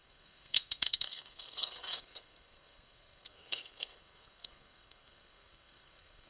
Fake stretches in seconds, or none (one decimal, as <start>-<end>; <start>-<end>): 0.0-6.3